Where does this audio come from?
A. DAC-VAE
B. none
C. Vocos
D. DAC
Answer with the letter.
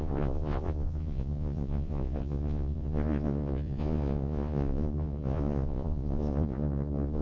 C